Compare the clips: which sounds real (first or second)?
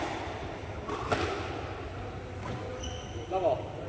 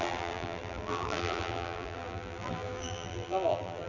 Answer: first